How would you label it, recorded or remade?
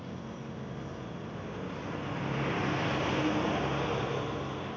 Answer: recorded